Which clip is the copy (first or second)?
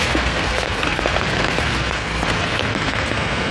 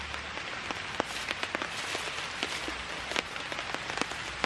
first